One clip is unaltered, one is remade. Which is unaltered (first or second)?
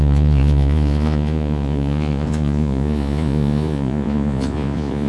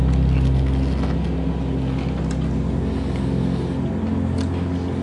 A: second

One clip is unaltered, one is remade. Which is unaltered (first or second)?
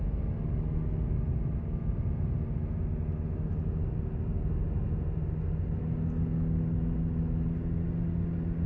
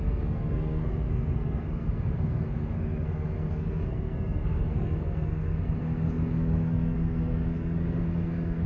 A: first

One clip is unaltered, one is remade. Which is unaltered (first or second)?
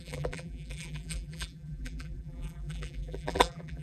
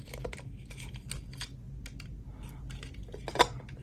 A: second